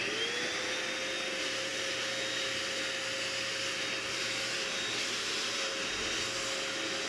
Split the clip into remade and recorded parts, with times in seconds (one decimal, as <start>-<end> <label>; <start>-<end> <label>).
0.0-7.1 recorded